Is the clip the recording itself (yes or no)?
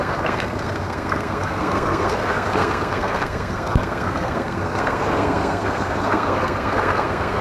no